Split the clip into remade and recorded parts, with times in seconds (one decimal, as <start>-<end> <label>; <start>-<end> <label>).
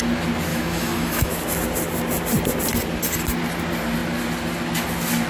0.0-0.5 recorded; 0.5-1.3 remade; 1.3-5.3 recorded